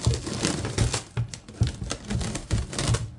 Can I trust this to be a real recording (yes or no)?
no